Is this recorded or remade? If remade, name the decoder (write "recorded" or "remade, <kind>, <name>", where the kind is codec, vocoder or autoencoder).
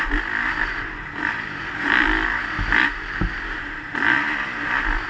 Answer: recorded